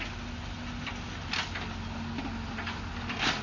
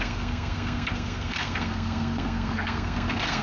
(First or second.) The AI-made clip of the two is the second